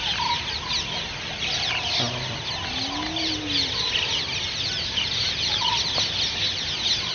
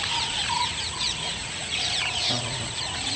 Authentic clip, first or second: first